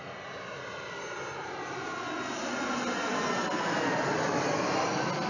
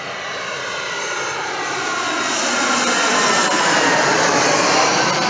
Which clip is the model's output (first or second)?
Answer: second